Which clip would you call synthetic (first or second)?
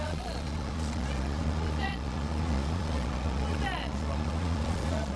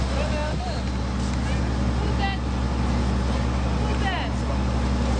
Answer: first